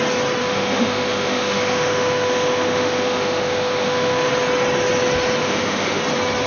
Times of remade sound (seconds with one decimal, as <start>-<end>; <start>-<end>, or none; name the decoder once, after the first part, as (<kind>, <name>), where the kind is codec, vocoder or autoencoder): 0.4-4.3 (autoencoder, DAC-VAE); 5.4-6.0